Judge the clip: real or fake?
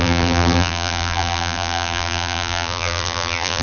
fake